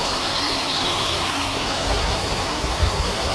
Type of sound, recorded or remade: remade